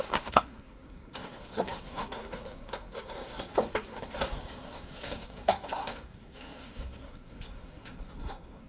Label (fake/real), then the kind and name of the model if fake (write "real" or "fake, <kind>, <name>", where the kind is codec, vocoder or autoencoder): fake, codec, SNAC